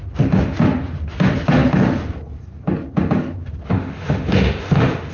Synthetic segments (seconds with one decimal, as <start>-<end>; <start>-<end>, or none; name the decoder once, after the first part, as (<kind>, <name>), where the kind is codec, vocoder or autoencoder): 3.7-5.1 (autoencoder, DAC-VAE)